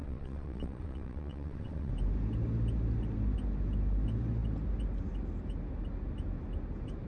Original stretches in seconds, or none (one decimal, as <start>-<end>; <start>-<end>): 1.9-7.1